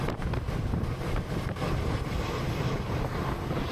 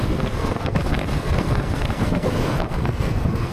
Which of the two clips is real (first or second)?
first